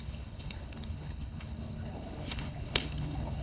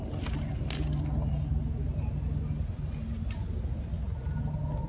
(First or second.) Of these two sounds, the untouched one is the second